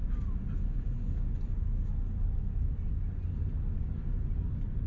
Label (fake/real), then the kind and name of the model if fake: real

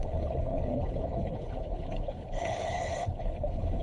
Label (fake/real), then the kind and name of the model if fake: fake, codec, HILCodec